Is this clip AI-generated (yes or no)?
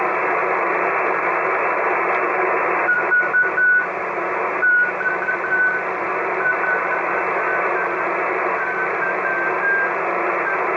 no